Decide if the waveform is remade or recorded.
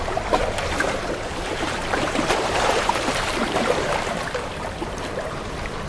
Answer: remade